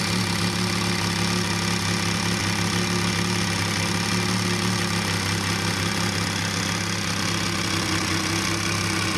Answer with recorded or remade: recorded